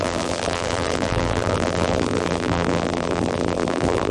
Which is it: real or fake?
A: fake